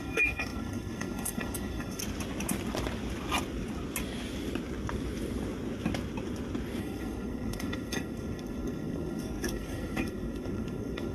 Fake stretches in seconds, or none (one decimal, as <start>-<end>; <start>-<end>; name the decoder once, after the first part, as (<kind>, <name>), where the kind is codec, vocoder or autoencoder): 0.0-2.0 (codec, SNAC); 6.8-11.1